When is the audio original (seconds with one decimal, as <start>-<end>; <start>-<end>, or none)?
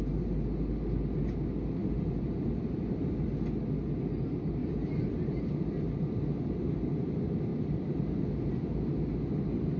0.0-1.8; 2.4-4.6; 5.1-7.5; 8.2-9.8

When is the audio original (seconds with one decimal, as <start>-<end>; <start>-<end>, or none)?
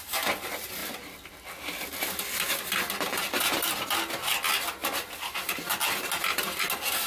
0.0-7.1